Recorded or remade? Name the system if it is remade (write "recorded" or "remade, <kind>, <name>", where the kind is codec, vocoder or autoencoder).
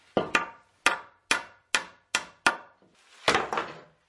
recorded